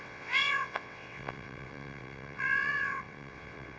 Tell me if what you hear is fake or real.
fake